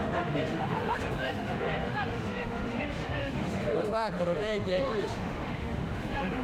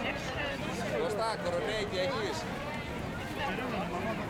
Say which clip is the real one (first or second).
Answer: second